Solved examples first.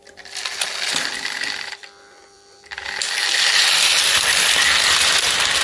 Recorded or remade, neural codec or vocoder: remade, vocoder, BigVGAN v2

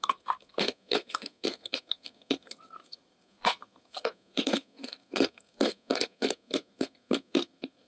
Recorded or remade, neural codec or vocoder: remade, codec, SNAC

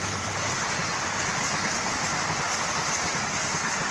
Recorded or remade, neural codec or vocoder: recorded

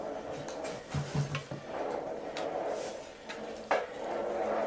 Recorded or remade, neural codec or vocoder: recorded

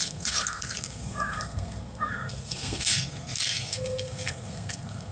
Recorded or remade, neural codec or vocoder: remade, codec, SNAC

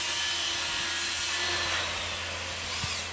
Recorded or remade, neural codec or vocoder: recorded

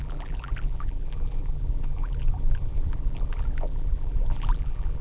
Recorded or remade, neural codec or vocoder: remade, vocoder, BigVGAN v2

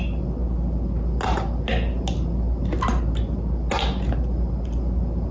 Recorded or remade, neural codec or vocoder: recorded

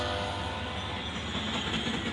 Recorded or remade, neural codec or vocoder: recorded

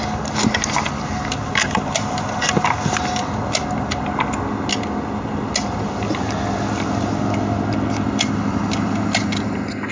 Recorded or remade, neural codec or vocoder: recorded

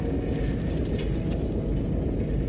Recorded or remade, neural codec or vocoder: recorded